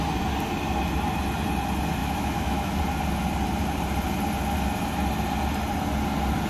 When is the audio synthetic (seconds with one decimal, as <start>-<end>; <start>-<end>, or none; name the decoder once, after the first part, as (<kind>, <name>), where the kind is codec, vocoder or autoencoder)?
2.0-2.8 (autoencoder, DAC-VAE)